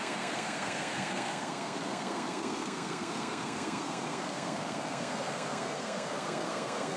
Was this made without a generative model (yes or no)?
no